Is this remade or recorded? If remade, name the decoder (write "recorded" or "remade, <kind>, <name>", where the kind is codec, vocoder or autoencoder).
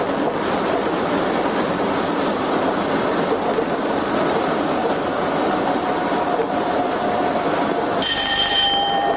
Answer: remade, vocoder, BigVGAN v2